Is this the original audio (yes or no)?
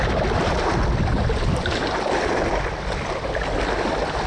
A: yes